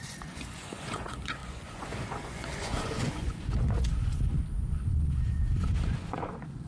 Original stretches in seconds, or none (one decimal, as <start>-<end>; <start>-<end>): none